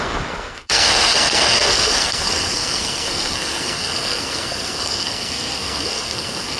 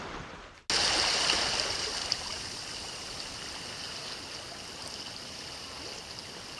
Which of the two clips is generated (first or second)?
first